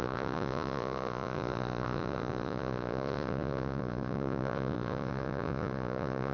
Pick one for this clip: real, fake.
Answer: fake